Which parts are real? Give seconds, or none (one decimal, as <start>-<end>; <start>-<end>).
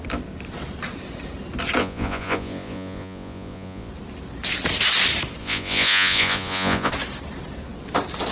0.0-1.8; 3.9-5.4; 6.9-8.3